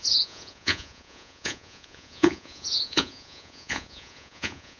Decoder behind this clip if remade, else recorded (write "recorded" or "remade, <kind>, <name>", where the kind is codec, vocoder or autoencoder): remade, vocoder, Vocos